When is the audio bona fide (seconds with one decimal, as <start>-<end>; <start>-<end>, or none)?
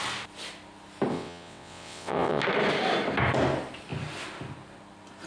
0.0-1.1; 2.4-5.3